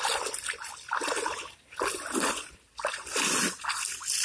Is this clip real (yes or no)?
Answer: yes